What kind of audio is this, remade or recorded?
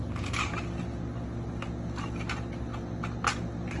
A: recorded